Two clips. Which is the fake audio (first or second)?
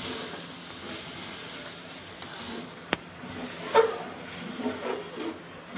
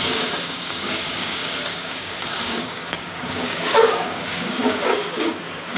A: second